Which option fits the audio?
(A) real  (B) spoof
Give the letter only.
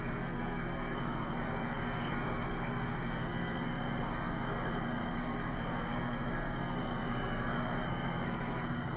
B